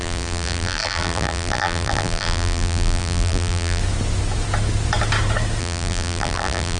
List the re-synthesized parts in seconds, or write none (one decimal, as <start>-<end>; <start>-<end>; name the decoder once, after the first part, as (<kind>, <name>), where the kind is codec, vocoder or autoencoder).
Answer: 0.0-3.8 (vocoder, BigVGAN v2); 5.6-6.8